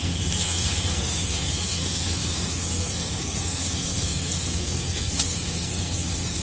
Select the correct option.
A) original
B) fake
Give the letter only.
B